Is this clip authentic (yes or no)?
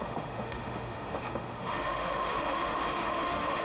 no